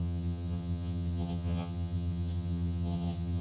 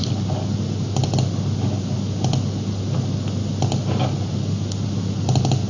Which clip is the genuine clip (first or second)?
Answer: second